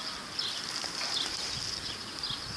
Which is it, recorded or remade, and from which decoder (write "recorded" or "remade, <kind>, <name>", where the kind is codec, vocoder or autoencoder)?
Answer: recorded